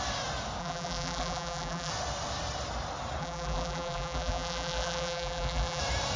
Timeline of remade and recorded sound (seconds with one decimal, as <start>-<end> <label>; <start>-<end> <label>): 0.0-0.6 recorded; 0.6-1.9 remade; 1.9-3.2 recorded; 3.2-5.8 remade; 5.8-6.2 recorded